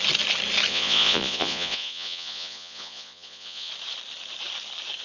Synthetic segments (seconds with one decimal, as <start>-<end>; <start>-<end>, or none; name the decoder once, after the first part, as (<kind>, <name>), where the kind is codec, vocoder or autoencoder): 0.7-3.7 (vocoder, Vocos)